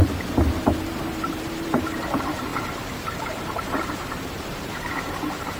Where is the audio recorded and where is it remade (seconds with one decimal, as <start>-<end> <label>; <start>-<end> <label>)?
0.0-0.8 recorded; 0.8-5.6 remade